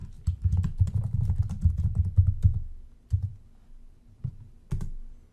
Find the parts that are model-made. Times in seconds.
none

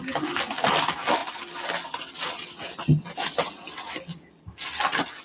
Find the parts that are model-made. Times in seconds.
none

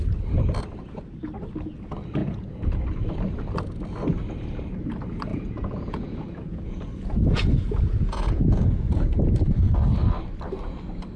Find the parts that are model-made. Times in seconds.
2.2-2.8 (vocoder, Vocos); 5.3-9.1

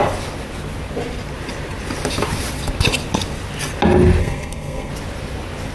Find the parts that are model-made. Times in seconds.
4.2-4.9 (codec, SNAC)

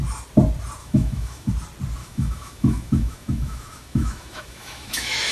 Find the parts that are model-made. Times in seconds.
0.8-1.5 (autoencoder, DAC-VAE); 2.0-5.3

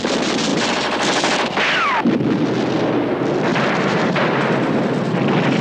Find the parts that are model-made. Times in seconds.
3.5-4.8 (vocoder, BigVGAN v2)